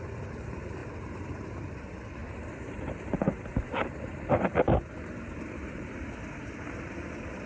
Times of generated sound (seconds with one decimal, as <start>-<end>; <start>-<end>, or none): 0.8-1.4; 2.2-5.8